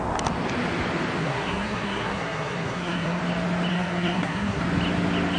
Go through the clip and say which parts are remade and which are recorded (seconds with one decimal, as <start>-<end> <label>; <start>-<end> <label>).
0.0-1.2 recorded; 1.2-3.2 remade; 3.2-3.7 recorded; 3.7-4.6 remade; 4.6-5.4 recorded